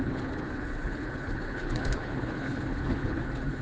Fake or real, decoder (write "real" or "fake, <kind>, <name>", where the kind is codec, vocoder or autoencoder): fake, codec, HILCodec